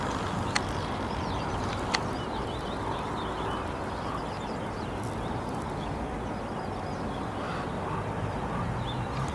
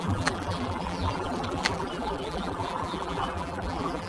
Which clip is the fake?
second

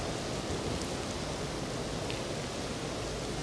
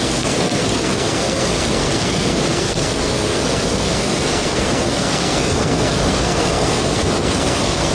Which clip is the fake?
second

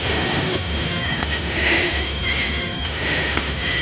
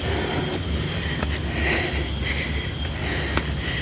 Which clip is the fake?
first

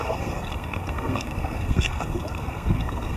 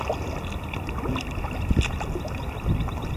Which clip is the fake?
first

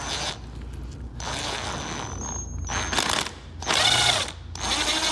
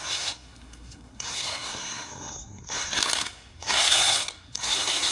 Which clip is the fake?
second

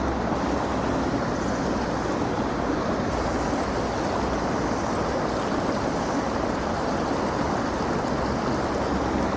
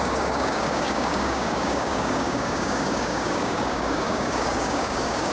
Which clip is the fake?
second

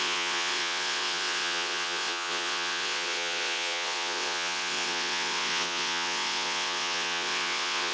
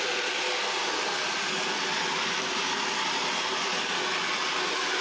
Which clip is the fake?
first